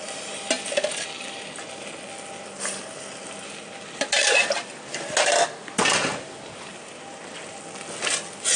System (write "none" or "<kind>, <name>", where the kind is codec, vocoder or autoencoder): none